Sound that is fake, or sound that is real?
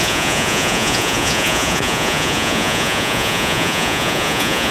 fake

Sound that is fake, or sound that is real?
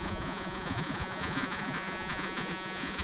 fake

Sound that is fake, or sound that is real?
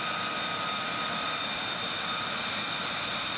real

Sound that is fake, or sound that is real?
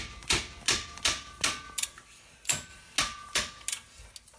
real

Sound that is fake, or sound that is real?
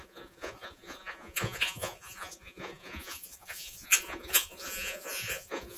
fake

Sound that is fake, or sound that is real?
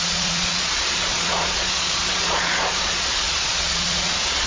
fake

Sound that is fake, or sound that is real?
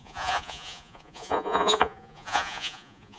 fake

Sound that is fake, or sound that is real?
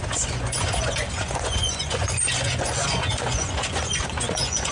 fake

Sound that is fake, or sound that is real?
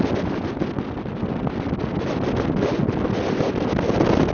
real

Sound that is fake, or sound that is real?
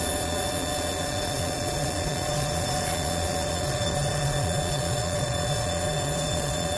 fake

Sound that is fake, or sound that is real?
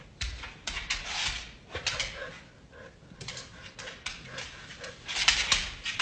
real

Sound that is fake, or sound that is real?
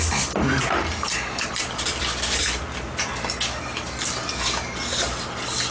real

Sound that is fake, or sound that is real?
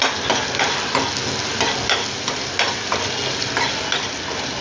real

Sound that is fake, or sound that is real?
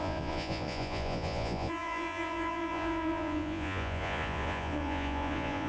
fake